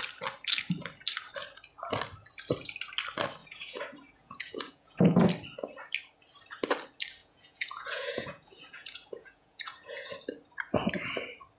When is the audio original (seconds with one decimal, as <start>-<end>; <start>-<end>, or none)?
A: 0.0-3.4; 5.2-7.2; 10.1-11.6